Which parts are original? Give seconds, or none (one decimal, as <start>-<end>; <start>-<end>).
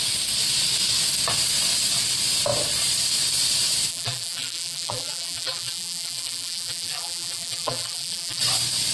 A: 0.0-3.9; 8.4-8.9